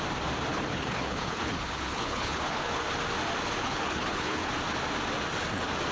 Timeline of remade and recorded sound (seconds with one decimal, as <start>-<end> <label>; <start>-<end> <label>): 0.0-0.5 recorded; 0.5-2.8 remade; 2.8-3.6 recorded; 3.6-4.5 remade; 4.5-5.9 recorded